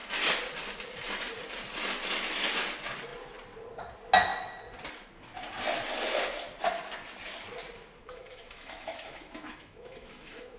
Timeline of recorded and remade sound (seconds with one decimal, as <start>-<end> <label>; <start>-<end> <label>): 0.0-8.0 recorded; 8.0-10.6 remade